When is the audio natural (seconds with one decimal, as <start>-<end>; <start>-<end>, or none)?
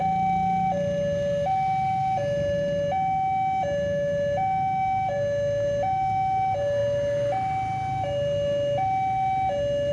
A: 0.0-9.9